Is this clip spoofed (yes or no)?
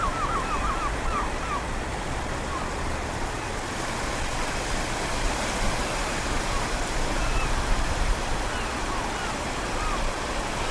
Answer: no